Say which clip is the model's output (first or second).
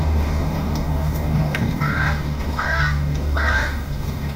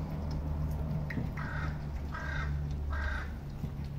first